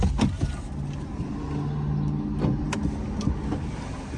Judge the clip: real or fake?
real